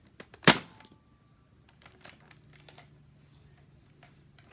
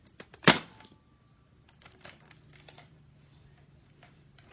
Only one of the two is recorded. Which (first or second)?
first